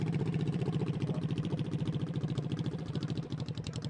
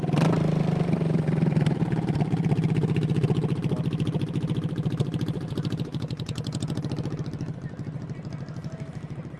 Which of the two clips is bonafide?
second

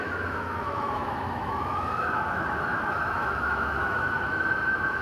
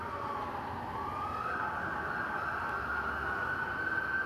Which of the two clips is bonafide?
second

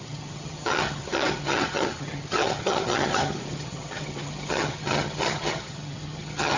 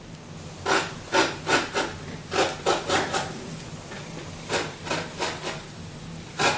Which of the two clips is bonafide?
second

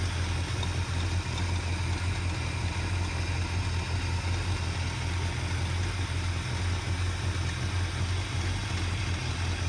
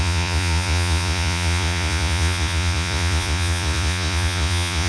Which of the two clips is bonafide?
first